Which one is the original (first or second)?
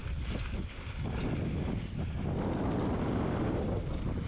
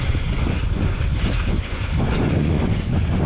first